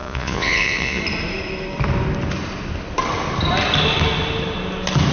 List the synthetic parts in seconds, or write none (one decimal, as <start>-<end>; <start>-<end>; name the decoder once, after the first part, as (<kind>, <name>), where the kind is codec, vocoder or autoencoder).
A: 0.0-1.0 (vocoder, Vocos)